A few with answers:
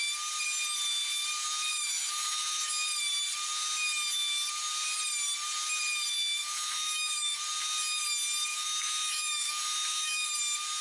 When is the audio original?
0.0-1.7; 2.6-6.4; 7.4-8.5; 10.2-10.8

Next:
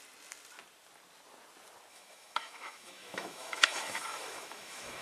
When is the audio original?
0.0-1.9

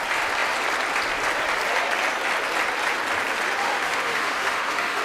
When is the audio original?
0.0-3.6